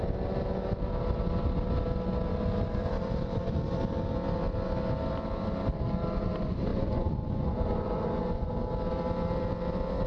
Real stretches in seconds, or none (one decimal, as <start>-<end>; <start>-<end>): 0.0-6.7; 8.5-10.1